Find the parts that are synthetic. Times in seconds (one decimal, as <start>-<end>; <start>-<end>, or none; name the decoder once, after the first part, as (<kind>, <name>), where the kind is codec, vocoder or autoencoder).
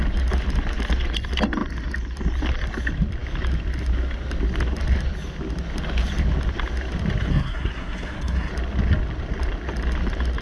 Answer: 7.3-8.5 (codec, SNAC)